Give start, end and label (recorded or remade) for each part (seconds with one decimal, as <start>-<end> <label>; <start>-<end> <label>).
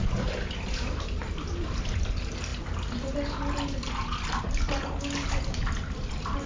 0.0-6.5 recorded